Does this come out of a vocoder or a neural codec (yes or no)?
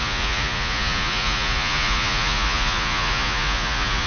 yes